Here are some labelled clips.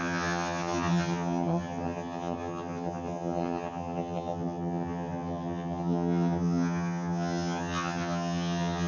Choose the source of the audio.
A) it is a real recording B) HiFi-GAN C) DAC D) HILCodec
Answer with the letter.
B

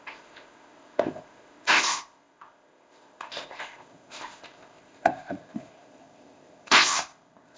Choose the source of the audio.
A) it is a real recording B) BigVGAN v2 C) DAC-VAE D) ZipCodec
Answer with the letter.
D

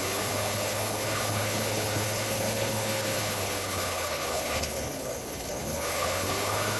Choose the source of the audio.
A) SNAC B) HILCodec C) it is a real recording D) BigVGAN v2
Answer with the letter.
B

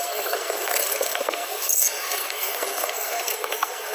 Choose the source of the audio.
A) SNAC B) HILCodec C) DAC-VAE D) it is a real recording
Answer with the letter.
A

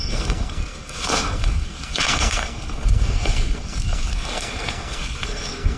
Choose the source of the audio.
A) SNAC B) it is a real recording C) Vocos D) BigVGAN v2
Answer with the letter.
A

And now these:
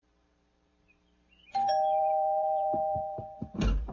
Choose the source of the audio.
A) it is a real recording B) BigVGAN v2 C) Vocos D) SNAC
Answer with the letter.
B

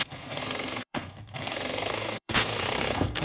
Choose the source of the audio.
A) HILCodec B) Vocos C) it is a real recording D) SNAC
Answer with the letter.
D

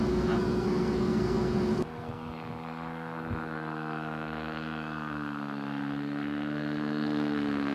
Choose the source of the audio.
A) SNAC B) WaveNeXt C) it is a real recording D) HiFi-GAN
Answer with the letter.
A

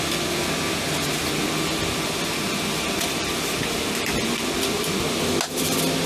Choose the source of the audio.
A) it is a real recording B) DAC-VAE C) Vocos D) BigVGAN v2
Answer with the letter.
A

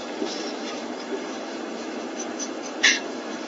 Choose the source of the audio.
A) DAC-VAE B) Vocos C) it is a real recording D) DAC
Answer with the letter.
A